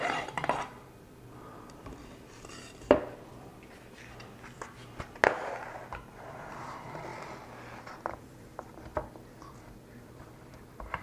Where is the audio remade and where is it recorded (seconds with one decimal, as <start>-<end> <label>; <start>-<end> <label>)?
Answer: 0.0-3.5 remade; 3.5-6.2 recorded; 6.2-7.1 remade; 7.1-8.2 recorded; 8.2-11.0 remade